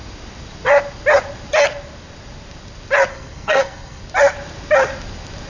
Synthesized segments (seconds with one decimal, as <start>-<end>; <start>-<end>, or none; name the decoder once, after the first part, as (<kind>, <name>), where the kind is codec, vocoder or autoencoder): 3.1-4.0 (codec, SNAC)